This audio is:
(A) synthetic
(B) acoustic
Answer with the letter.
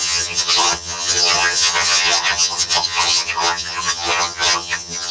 A